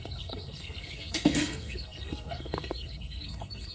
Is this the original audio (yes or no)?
no